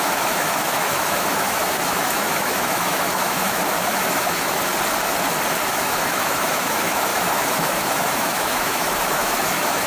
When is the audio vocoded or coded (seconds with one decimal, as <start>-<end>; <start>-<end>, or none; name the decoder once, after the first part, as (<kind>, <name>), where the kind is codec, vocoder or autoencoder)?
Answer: 0.0-4.7 (autoencoder, DAC-VAE); 5.7-9.9